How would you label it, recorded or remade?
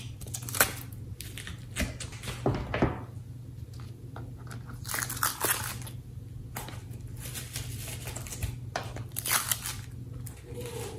recorded